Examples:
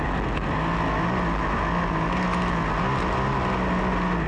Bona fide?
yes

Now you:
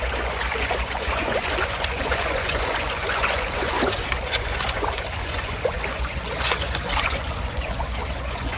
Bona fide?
no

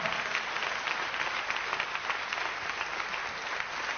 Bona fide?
yes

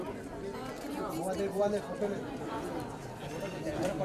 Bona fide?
yes